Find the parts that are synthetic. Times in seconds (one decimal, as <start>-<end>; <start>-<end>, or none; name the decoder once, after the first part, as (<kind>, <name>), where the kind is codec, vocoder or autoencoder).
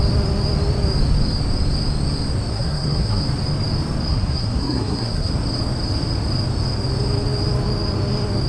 2.5-3.2 (codec, SNAC); 4.1-5.3